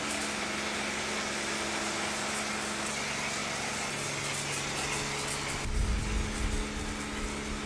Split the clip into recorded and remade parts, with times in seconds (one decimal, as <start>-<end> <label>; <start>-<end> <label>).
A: 0.0-7.7 recorded